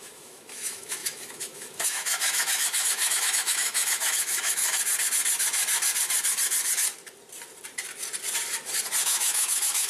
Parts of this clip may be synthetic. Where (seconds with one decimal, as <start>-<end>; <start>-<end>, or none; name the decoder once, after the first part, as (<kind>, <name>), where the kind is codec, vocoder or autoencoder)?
0.0-4.6 (autoencoder, DAC-VAE); 9.0-9.9